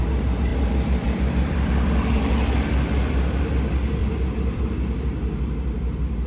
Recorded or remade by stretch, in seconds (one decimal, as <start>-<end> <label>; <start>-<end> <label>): 0.0-0.5 recorded; 0.5-3.4 remade; 3.4-4.0 recorded; 4.0-4.6 remade; 4.6-6.3 recorded